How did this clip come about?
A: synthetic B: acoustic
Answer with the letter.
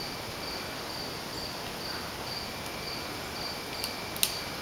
B